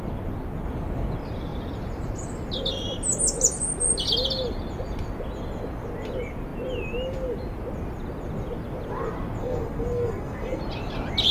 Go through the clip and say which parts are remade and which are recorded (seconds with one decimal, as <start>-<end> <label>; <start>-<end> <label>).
0.0-9.4 recorded; 9.4-10.6 remade; 10.6-11.3 recorded